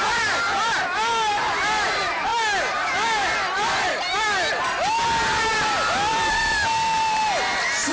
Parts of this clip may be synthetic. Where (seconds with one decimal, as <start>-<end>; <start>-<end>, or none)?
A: none